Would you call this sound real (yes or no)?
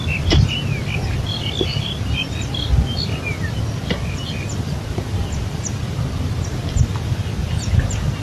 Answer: yes